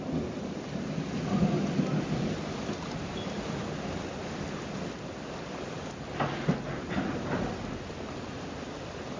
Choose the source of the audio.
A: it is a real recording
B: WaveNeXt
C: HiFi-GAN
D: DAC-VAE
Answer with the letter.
A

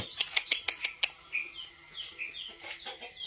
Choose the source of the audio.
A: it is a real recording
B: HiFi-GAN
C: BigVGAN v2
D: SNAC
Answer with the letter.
A